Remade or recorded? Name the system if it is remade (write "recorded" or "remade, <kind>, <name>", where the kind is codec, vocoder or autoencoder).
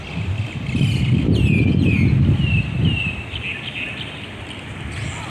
recorded